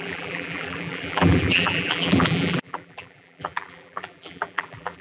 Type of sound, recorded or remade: remade